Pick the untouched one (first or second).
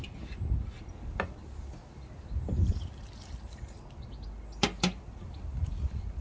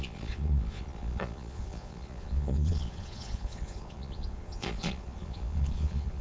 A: first